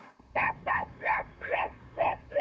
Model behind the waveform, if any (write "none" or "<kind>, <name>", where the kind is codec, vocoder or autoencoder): codec, SNAC